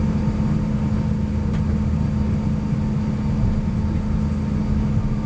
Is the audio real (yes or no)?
yes